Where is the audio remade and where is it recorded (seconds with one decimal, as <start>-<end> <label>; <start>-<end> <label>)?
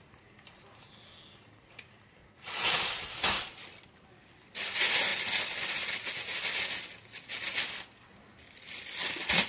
0.0-2.2 recorded; 2.2-2.9 remade; 2.9-9.5 recorded